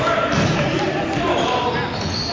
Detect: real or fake real